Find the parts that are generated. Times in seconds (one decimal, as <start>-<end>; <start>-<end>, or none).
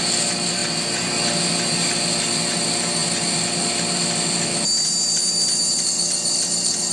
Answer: none